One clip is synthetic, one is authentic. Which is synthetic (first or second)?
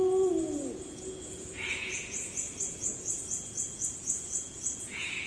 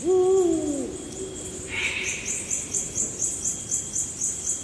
first